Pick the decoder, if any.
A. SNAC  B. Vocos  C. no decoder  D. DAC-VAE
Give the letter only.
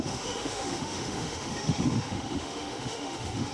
D